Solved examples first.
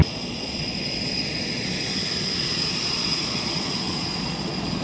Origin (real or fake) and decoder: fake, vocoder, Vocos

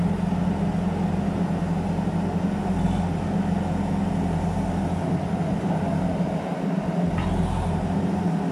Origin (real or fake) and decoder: real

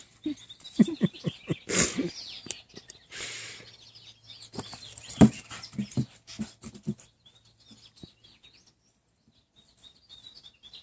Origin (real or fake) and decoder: real